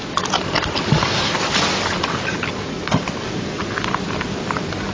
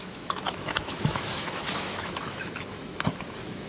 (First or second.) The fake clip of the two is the second